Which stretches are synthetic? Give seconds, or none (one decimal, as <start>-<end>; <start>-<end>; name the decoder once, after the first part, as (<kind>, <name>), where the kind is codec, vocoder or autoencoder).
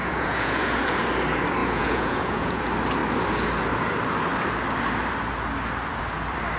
0.0-0.8 (vocoder, Vocos); 1.6-2.6